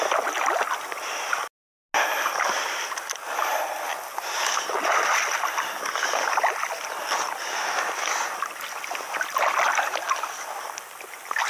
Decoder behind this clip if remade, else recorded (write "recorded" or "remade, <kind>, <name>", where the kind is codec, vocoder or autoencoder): recorded